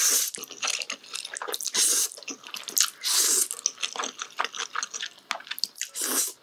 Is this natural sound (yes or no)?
yes